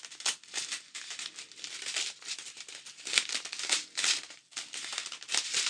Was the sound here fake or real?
real